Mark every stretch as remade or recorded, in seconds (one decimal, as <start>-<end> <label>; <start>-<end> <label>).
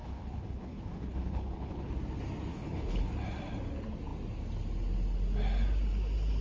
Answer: 0.0-1.9 remade; 1.9-2.5 recorded; 2.5-3.1 remade; 3.1-6.4 recorded